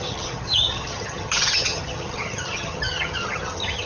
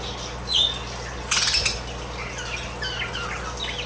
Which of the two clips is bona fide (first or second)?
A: second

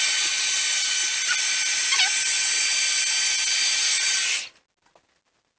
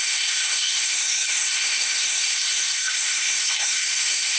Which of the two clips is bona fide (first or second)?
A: first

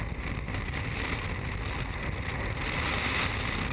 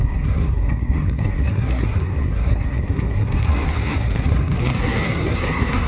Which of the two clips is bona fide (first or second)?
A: first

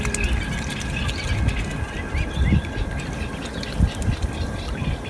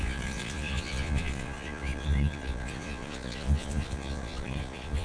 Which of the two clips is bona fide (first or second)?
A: first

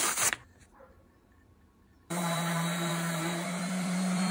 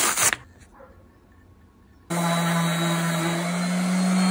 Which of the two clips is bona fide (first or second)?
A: second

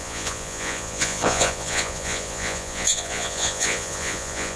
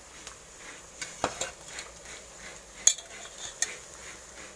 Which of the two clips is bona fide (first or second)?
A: second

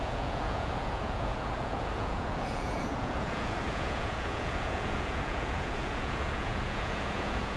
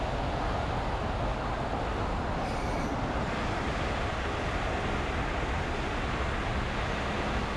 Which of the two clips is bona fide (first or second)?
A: second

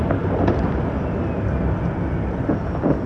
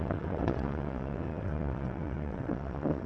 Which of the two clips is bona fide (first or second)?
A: first